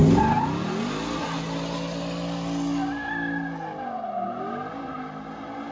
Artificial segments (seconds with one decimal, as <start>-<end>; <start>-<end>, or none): none